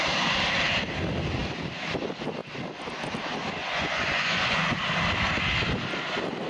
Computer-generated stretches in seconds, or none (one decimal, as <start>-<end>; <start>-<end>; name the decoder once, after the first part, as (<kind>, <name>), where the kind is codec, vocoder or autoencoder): 3.6-4.8 (vocoder, Vocos)